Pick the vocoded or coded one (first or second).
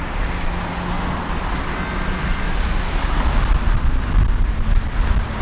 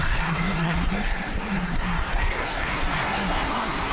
second